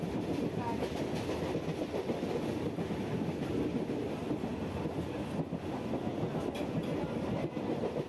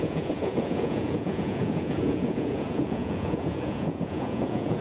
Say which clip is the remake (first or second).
second